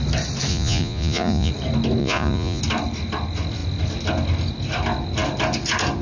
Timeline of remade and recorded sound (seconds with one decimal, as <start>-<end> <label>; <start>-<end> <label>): 0.0-0.5 recorded; 0.5-1.5 remade; 1.5-2.0 recorded; 2.0-2.6 remade; 2.6-6.0 recorded